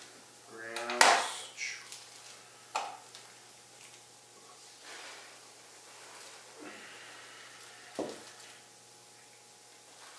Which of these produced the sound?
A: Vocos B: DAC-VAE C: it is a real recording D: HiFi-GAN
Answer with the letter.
C